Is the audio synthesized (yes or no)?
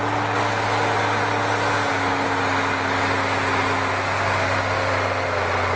no